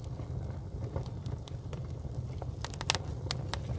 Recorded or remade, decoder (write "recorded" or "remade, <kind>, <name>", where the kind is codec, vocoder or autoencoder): recorded